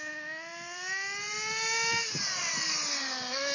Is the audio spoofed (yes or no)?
no